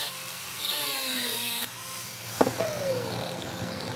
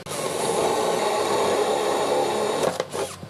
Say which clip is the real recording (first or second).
second